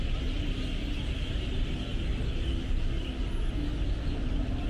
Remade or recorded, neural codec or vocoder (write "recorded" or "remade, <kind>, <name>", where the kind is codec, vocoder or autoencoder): recorded